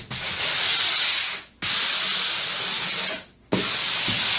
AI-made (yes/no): no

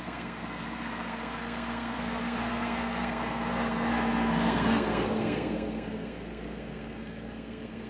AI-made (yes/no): yes